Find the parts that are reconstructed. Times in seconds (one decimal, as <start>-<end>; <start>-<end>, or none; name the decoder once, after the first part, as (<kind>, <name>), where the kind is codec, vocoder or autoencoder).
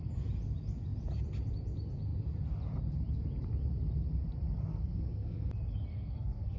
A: 4.7-5.5 (codec, SNAC); 5.9-6.6